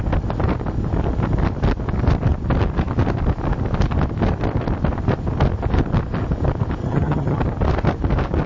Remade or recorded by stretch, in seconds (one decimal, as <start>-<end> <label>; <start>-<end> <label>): 0.0-6.8 recorded; 6.8-7.4 remade; 7.4-8.5 recorded